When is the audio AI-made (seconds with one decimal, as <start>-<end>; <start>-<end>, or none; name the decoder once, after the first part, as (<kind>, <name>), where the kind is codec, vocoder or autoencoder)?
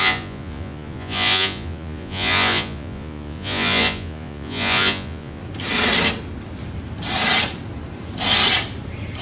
0.0-5.4 (vocoder, Vocos)